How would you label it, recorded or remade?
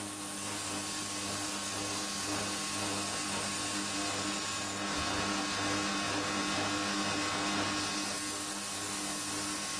recorded